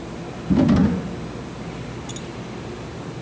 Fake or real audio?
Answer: real